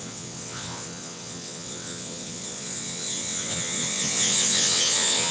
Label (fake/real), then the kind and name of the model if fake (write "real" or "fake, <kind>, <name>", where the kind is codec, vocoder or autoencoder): fake, vocoder, WaveNeXt